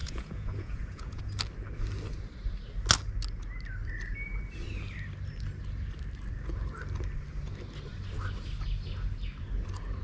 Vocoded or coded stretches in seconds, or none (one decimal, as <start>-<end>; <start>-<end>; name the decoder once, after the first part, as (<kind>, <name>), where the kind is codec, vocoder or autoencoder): 0.0-1.2 (vocoder, Vocos)